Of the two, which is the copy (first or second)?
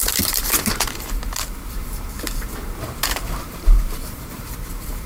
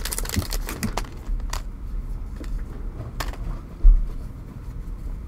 first